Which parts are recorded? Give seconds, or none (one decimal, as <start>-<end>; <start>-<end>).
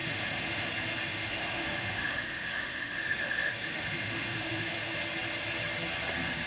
0.7-1.1; 5.0-6.5